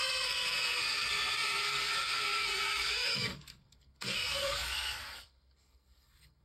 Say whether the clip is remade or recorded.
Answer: remade